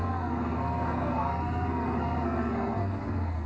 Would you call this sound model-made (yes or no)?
yes